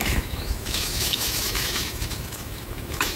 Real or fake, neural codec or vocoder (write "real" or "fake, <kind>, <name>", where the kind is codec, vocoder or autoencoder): fake, autoencoder, DAC-VAE